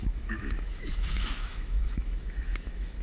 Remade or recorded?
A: remade